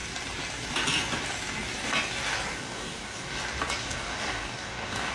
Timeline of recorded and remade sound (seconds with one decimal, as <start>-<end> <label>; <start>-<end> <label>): 0.0-2.5 recorded; 2.5-3.4 remade; 3.4-3.8 recorded; 3.8-5.1 remade